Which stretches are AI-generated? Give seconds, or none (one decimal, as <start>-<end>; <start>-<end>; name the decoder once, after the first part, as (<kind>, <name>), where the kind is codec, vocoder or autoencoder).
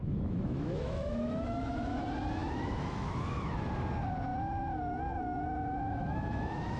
0.0-2.0 (autoencoder, DAC-VAE); 2.4-3.6; 6.0-6.8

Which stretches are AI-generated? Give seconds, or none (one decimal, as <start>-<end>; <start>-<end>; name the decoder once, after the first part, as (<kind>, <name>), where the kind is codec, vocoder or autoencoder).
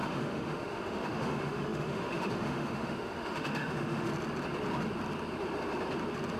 0.0-4.1 (autoencoder, DAC-VAE)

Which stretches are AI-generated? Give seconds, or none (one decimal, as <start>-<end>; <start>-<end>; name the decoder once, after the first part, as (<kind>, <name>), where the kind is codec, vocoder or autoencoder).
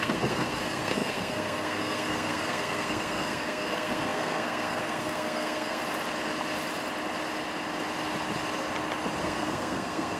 0.0-5.8 (codec, SNAC); 9.2-10.2